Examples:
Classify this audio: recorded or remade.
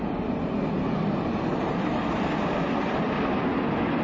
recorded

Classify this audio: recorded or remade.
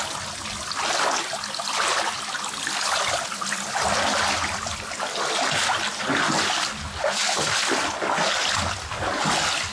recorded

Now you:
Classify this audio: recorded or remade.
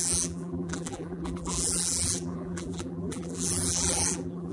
remade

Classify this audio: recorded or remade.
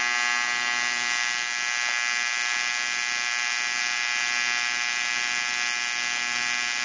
recorded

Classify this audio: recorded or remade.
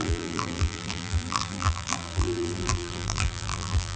remade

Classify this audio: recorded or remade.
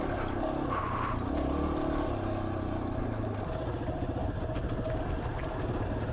recorded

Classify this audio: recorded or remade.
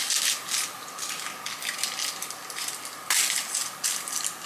recorded